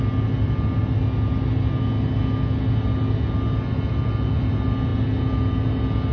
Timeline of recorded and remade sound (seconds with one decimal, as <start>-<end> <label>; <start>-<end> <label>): 0.0-6.1 recorded